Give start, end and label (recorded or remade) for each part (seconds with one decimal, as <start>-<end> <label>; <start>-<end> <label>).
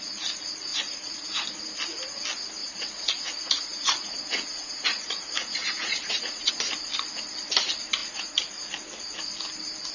0.0-0.7 recorded; 0.7-1.5 remade; 1.5-2.6 recorded; 2.6-6.5 remade; 6.5-8.0 recorded; 8.0-8.7 remade; 8.7-9.9 recorded